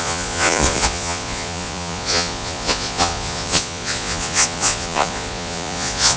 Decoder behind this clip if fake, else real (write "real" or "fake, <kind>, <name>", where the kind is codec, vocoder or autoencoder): fake, vocoder, Vocos